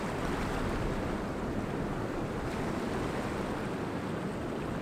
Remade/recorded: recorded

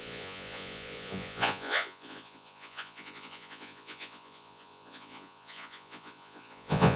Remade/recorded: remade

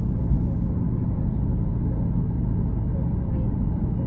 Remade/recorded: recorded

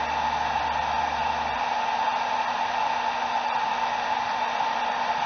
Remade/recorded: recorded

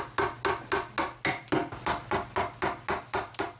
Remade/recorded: recorded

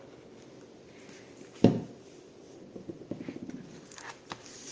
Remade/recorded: recorded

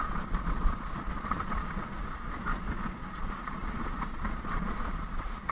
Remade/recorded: remade